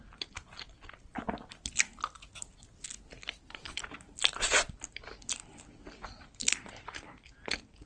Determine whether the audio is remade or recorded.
recorded